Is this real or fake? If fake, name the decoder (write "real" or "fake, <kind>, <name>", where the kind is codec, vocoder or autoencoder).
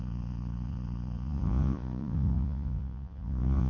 fake, vocoder, Vocos